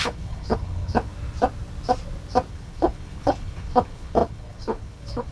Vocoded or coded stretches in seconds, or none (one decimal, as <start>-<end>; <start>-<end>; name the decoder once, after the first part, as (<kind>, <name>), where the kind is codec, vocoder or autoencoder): 0.0-1.1 (codec, HILCodec); 2.5-5.3